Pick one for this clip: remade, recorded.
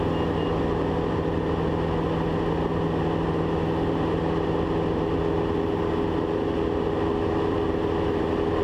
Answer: recorded